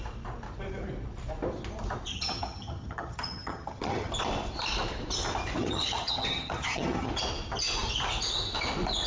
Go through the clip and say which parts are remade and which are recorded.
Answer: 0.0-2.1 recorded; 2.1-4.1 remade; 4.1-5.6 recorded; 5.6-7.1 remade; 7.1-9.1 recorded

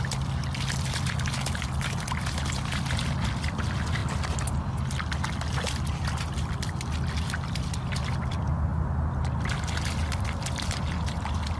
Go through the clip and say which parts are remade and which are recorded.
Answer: 0.0-11.6 recorded

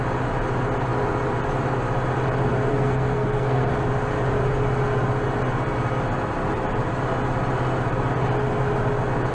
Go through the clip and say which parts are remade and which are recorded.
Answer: 0.0-2.7 recorded; 2.7-3.7 remade; 3.7-9.3 recorded

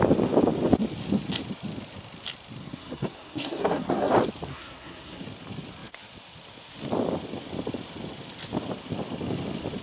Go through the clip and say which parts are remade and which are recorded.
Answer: 0.0-2.6 recorded; 2.6-4.1 remade; 4.1-4.5 recorded; 4.5-5.2 remade; 5.2-9.8 recorded

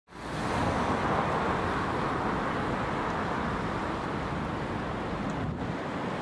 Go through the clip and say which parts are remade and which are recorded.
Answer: 0.0-6.2 recorded

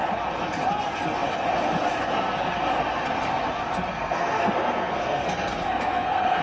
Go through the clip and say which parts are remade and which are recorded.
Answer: 0.0-3.9 recorded; 3.9-6.4 remade